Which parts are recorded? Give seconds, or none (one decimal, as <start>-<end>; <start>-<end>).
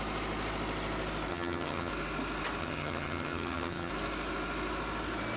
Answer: 0.0-1.3; 1.9-2.6; 3.9-5.4